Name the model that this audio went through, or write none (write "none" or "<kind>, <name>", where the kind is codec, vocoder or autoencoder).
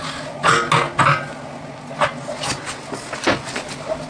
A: none